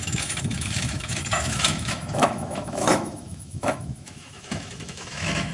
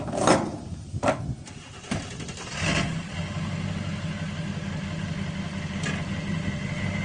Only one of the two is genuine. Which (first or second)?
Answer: second